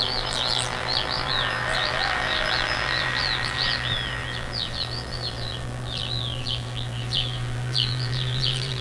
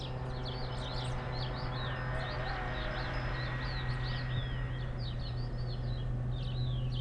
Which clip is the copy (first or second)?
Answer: first